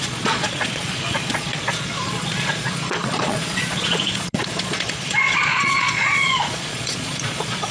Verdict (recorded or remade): remade